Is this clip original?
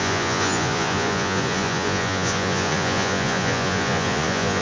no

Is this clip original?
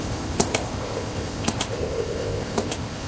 no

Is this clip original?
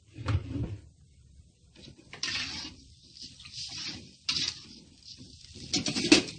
no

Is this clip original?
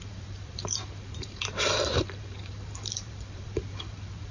no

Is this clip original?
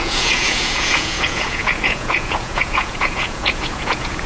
no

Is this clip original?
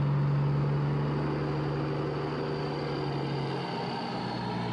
yes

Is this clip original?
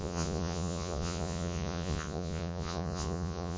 no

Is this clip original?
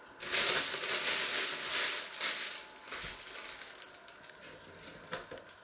yes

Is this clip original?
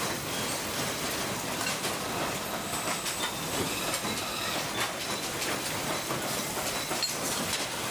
yes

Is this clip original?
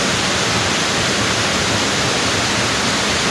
yes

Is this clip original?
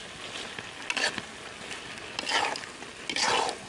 yes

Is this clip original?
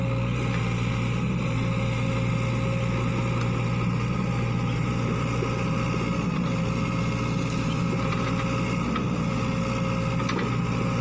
yes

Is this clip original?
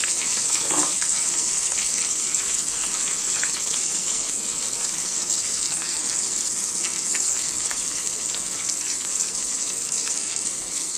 no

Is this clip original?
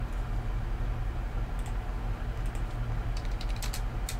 yes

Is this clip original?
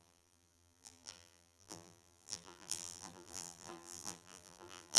no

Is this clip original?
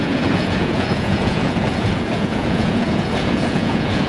no